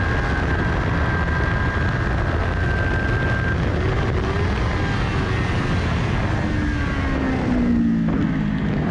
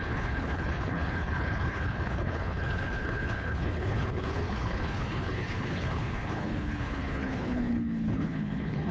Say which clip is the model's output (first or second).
second